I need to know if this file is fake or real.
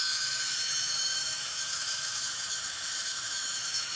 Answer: fake